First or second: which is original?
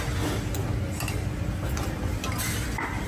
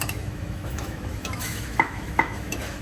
first